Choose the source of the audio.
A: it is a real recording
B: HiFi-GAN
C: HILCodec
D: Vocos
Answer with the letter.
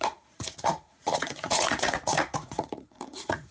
D